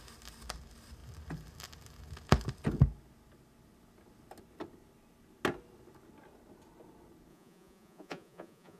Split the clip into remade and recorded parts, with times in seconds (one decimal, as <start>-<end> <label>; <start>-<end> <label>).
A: 0.0-7.3 recorded; 7.3-8.8 remade